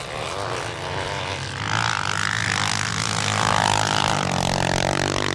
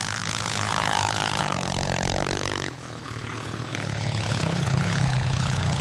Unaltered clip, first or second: first